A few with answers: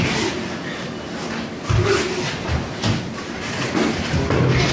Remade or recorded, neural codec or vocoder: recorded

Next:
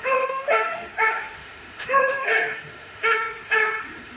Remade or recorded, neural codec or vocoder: remade, autoencoder, DAC-VAE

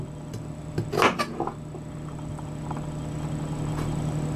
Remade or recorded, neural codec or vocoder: recorded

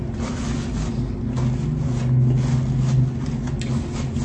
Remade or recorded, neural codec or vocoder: recorded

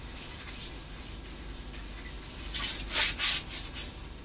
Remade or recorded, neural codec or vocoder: recorded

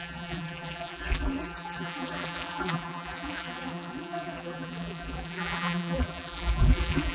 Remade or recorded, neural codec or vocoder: remade, vocoder, BigVGAN v2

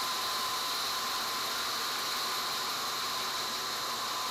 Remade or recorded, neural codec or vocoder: recorded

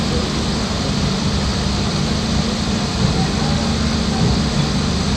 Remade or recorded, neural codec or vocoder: recorded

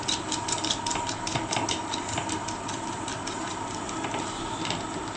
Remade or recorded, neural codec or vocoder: recorded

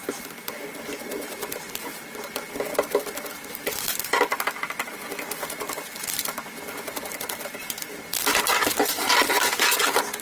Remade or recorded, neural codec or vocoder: remade, vocoder, BigVGAN v2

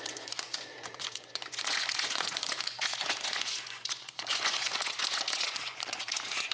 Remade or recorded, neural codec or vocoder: remade, vocoder, Vocos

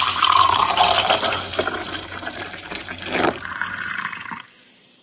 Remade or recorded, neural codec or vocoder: remade, vocoder, BigVGAN v2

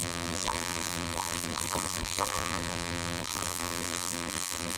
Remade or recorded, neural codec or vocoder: remade, vocoder, BigVGAN v2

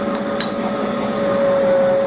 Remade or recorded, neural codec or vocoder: recorded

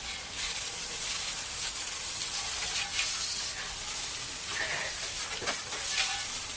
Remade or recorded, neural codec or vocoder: recorded